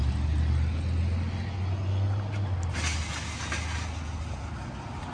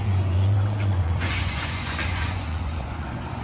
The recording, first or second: first